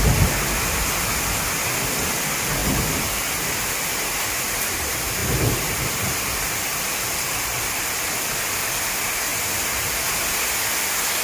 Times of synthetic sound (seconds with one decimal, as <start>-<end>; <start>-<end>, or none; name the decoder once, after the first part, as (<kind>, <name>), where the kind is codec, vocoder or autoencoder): 5.2-7.9 (vocoder, BigVGAN v2); 9.3-9.9